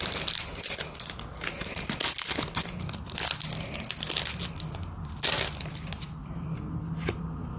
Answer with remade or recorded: recorded